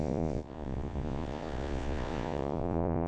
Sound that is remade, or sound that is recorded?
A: remade